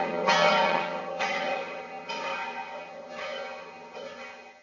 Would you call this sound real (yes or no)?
no